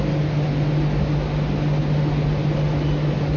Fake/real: real